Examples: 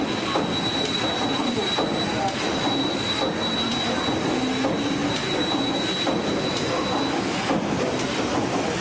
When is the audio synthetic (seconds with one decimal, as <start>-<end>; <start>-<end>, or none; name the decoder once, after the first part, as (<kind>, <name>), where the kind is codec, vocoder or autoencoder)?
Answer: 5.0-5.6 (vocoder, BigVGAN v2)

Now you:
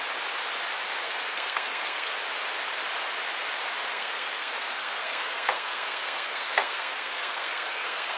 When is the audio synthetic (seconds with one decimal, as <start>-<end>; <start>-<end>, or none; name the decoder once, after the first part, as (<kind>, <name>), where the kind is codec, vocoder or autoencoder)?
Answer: 1.0-2.1 (codec, SNAC); 3.9-8.2

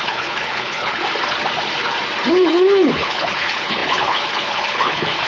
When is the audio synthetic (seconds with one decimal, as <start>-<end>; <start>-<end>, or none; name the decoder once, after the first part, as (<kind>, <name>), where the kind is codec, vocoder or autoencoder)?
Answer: 0.0-1.0 (codec, HILCodec); 2.3-5.3

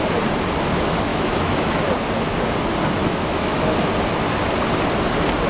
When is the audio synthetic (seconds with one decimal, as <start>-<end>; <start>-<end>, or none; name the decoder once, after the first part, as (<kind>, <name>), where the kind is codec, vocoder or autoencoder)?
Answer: 1.1-1.8 (autoencoder, DAC-VAE); 3.0-3.7

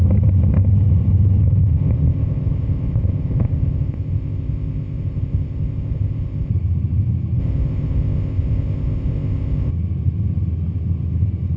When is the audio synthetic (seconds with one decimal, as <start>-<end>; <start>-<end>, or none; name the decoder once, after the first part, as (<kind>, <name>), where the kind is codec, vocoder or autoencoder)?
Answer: 1.4-6.5 (codec, ZipCodec); 7.4-9.7